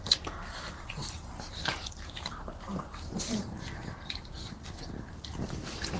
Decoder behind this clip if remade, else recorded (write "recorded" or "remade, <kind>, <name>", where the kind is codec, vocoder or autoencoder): remade, vocoder, BigVGAN v2